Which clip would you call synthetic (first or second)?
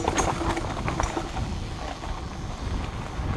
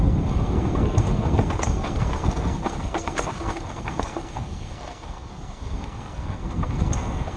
second